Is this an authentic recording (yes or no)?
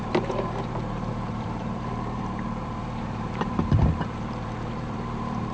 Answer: no